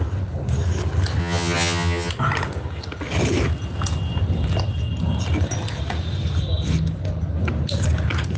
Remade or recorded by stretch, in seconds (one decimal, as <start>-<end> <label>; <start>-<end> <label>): 0.0-1.2 recorded; 1.2-2.1 remade; 2.1-8.4 recorded